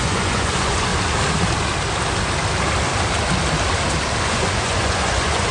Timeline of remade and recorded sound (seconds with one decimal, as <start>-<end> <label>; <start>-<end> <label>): 0.0-0.9 remade; 0.9-4.2 recorded; 4.2-5.5 remade